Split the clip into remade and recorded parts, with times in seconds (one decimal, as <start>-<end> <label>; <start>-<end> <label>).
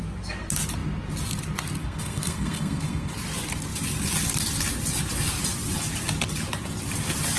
0.0-1.8 recorded; 1.8-3.1 remade; 3.1-7.4 recorded